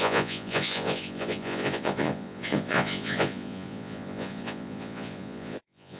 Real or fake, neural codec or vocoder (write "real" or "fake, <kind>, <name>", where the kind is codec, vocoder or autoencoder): fake, vocoder, Vocos